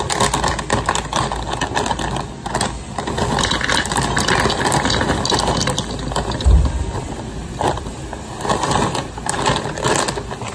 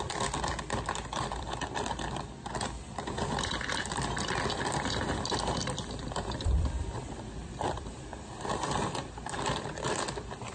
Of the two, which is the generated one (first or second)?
second